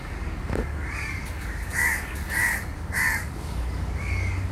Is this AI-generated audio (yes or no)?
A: yes